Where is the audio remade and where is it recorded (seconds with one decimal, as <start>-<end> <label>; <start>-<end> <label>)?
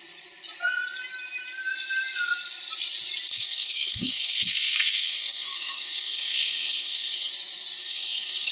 0.0-3.3 recorded; 3.3-7.3 remade; 7.3-7.8 recorded; 7.8-8.5 remade